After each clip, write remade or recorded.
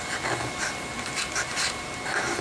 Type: recorded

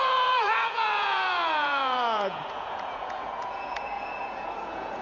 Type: remade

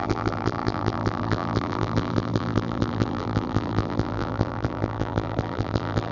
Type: remade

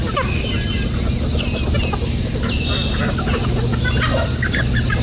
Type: recorded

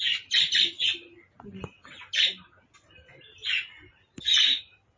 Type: recorded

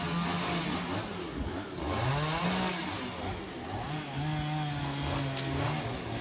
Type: recorded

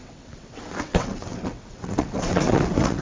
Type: remade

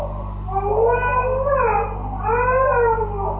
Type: recorded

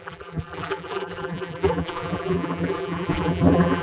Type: remade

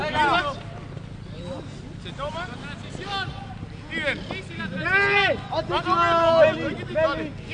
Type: recorded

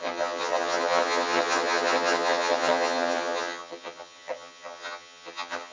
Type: remade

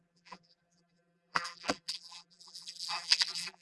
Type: remade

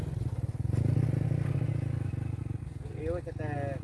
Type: recorded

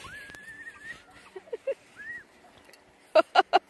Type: recorded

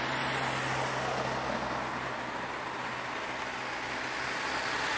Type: recorded